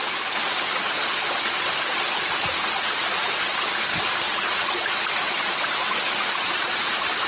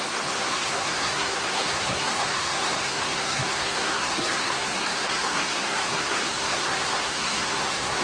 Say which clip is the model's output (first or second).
second